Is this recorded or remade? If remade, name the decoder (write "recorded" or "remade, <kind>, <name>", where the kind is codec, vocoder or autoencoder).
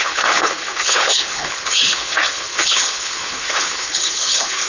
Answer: remade, codec, HILCodec